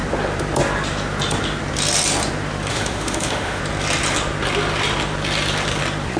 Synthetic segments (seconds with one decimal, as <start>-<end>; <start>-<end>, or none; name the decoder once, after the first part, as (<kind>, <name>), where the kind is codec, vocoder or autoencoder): 2.7-3.6 (autoencoder, DAC-VAE)